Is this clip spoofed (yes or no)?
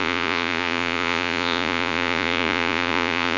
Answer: yes